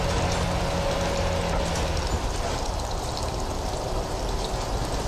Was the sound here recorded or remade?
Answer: recorded